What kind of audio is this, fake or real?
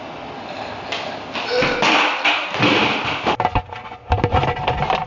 real